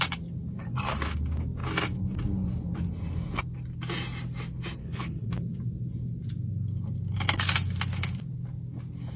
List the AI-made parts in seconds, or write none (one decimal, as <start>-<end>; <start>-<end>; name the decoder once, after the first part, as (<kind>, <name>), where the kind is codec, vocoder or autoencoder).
4.8-5.3 (codec, HILCodec)